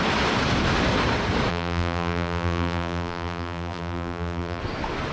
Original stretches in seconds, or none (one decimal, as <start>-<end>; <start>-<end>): 0.0-1.5; 4.6-5.1